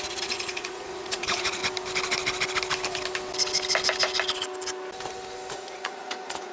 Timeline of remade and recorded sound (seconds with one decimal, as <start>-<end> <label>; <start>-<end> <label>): 0.0-1.6 remade; 1.6-5.5 recorded; 5.5-6.5 remade

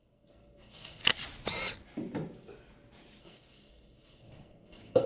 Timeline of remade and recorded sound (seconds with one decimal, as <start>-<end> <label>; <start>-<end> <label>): 0.0-1.0 remade; 1.0-3.2 recorded; 3.2-5.1 remade

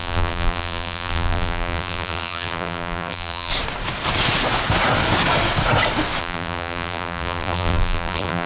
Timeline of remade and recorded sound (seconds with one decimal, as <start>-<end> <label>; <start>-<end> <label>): 0.0-3.5 remade; 3.5-6.2 recorded; 6.2-8.5 remade

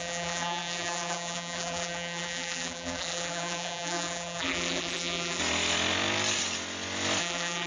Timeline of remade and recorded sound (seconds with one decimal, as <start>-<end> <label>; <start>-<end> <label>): 0.0-5.4 remade; 5.4-7.2 recorded; 7.2-7.7 remade